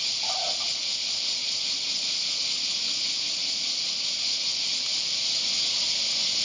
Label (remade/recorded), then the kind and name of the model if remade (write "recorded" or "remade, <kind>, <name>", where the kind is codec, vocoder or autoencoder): recorded